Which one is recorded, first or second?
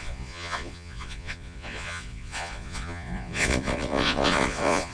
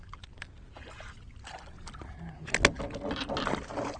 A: second